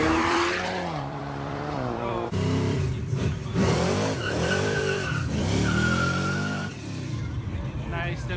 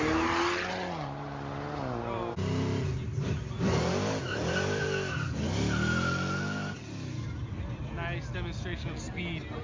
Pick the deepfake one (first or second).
first